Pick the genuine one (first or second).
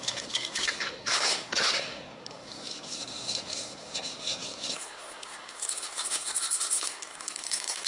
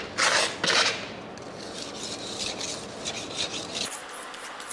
second